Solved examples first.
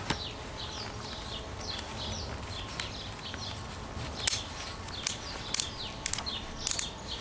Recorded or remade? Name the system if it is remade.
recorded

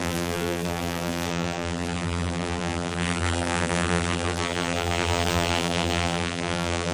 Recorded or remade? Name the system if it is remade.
remade, vocoder, BigVGAN v2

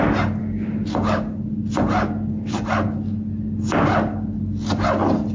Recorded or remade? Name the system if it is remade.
recorded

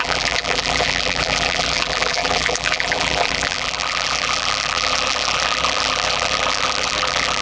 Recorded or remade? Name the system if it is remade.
remade, vocoder, BigVGAN v2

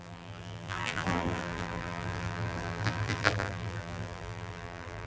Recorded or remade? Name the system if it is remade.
remade, vocoder, BigVGAN v2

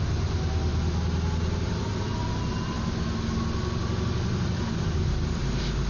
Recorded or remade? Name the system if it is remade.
recorded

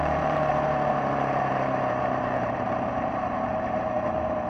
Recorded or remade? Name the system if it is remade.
remade, vocoder, BigVGAN v2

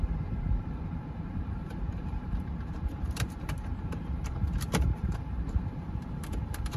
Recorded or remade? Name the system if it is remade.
remade, vocoder, BigVGAN v2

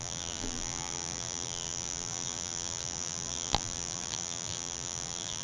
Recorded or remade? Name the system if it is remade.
remade, vocoder, BigVGAN v2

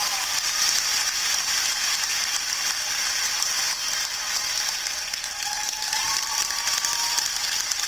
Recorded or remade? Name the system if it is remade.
remade, vocoder, BigVGAN v2